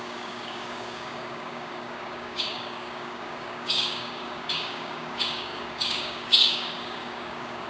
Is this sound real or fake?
fake